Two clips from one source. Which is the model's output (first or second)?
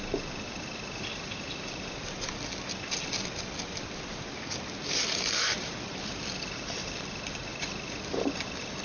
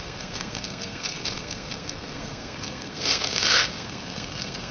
second